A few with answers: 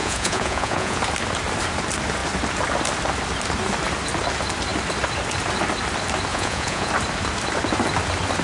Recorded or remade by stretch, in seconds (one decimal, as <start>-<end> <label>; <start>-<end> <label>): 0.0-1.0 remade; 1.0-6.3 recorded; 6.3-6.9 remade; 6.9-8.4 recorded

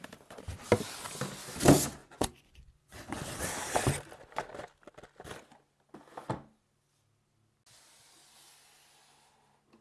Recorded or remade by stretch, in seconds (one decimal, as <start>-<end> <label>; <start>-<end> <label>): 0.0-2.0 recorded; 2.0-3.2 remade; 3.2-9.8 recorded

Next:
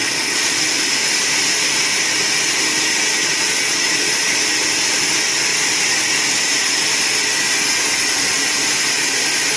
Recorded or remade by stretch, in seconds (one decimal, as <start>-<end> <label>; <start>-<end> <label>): 0.0-0.6 remade; 0.6-3.2 recorded; 3.2-4.4 remade; 4.4-9.6 recorded